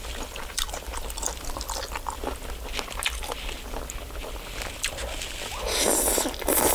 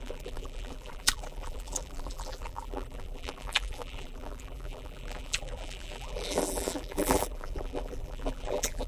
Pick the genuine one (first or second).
first